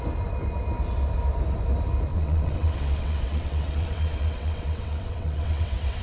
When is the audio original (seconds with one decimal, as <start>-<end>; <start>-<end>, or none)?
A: 0.0-2.1